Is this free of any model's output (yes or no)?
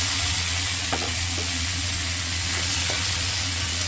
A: no